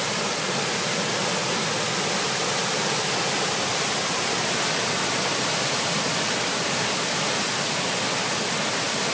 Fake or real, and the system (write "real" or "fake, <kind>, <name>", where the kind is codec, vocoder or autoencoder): real